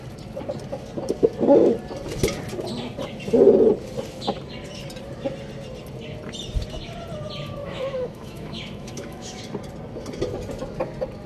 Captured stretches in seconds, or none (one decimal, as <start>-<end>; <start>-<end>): 0.0-7.6; 9.4-11.3